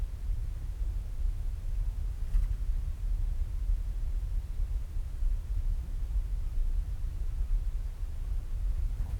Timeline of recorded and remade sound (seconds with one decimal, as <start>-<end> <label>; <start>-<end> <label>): 0.0-0.4 remade; 0.4-2.7 recorded; 2.7-9.2 remade

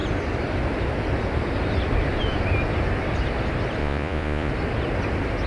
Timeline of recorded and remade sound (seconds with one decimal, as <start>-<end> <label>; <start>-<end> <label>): 0.0-3.8 recorded; 3.8-4.5 remade; 4.5-5.5 recorded

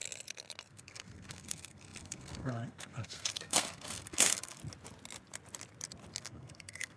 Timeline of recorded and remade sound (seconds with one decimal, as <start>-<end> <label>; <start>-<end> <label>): 0.0-0.7 recorded; 0.7-4.6 remade; 4.6-6.2 recorded; 6.2-7.0 remade

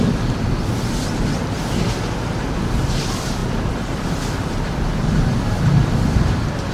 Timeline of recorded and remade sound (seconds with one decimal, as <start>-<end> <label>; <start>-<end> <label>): 0.0-6.7 recorded

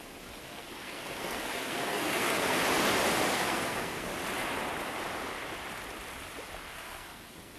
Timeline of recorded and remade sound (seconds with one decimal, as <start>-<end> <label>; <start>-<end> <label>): 0.0-2.6 remade; 2.6-3.3 recorded; 3.3-4.1 remade; 4.1-6.6 recorded; 6.6-7.6 remade

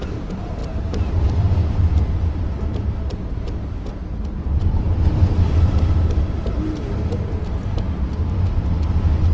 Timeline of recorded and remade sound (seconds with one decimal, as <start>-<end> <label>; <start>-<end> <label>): 0.0-9.3 recorded

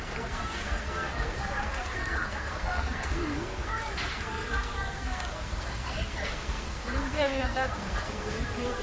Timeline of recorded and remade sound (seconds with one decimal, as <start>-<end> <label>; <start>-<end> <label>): 0.0-8.8 remade